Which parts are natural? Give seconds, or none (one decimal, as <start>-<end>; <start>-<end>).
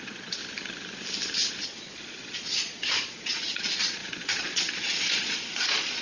0.4-1.5